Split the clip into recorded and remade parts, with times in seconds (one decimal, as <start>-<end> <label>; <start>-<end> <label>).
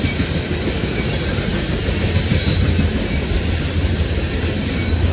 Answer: 0.0-5.1 remade